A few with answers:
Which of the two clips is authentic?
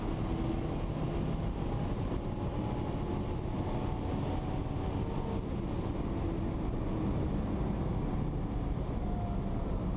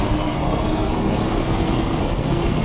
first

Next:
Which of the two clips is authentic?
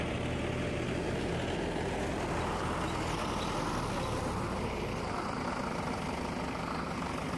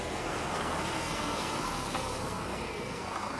first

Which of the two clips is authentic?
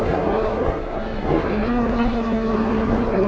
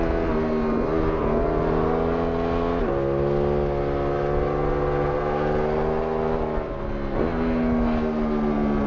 second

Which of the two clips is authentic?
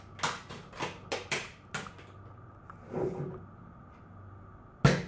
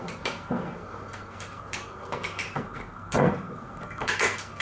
first